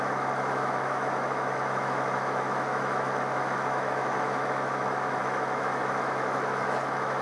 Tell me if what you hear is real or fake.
fake